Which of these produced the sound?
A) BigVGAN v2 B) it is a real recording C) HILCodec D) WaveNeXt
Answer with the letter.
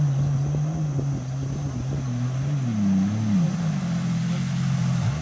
B